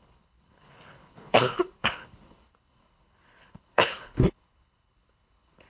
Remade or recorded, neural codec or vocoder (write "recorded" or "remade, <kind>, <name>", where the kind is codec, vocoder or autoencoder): remade, codec, HILCodec